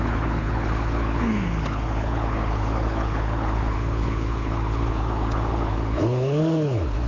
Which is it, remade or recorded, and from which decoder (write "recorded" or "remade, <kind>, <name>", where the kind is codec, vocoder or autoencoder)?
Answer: remade, codec, HILCodec